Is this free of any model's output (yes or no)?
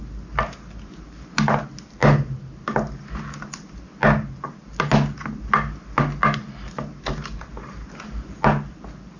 yes